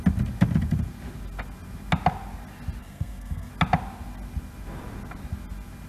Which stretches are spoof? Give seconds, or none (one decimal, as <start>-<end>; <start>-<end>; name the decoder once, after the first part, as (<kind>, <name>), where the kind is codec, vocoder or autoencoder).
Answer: 2.8-3.5 (codec, SNAC)